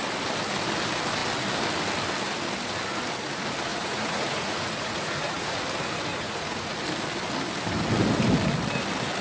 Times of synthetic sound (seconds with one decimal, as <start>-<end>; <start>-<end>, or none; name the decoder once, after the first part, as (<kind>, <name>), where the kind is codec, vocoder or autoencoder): 3.7-5.6 (vocoder, Vocos); 6.1-6.7